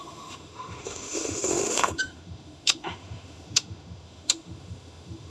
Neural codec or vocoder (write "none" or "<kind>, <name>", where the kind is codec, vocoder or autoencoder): autoencoder, DAC-VAE